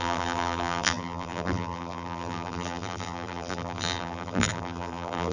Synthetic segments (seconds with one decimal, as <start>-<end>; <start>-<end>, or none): 0.0-5.3